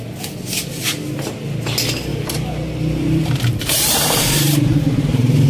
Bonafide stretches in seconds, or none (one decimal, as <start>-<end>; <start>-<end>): 0.0-2.1